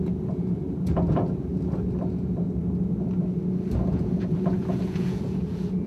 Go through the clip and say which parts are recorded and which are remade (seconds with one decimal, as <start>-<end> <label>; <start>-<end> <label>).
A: 0.0-1.5 remade; 1.5-3.8 recorded; 3.8-5.9 remade